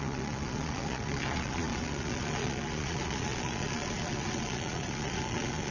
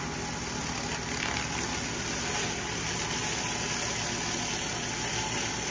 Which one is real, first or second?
second